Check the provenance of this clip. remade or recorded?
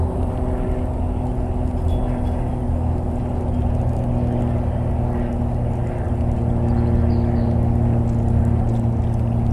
recorded